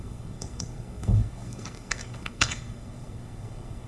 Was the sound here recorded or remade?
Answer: remade